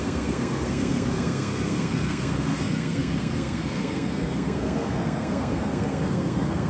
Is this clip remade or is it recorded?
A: remade